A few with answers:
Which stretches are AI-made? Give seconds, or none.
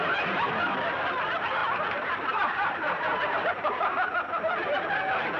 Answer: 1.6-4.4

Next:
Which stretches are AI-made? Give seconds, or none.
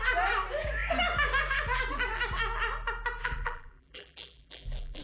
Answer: 3.2-5.0